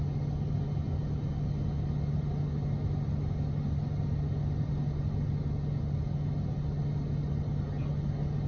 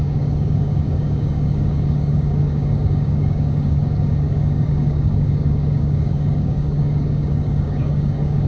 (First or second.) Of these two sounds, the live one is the first